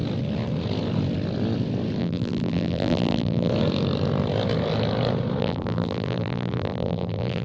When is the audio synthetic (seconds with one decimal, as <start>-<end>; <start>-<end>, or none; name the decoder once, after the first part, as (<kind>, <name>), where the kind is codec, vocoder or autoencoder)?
2.0-3.5 (vocoder, BigVGAN v2); 5.4-7.4